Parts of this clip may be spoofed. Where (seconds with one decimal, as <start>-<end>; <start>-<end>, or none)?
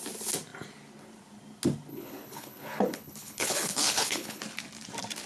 1.9-4.4